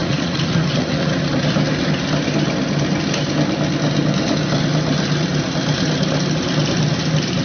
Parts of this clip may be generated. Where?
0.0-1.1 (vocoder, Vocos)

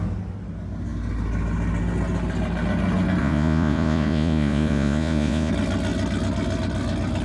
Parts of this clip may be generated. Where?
3.2-5.5 (vocoder, Vocos)

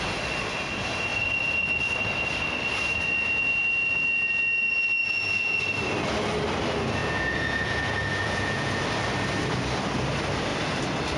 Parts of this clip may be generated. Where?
5.0-5.6 (vocoder, Vocos); 7.0-8.7

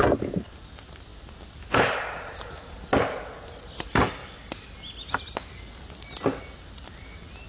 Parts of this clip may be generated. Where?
none

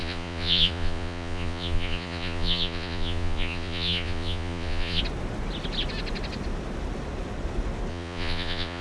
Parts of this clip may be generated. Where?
0.0-5.0 (vocoder, Vocos); 7.9-8.8

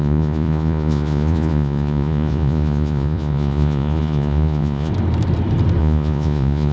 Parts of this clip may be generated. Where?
0.0-4.9 (vocoder, Vocos); 5.8-6.7

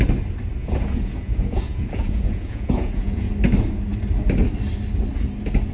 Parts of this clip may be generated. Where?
0.6-3.3 (vocoder, Vocos)

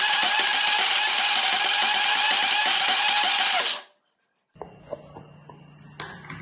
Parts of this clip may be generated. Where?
none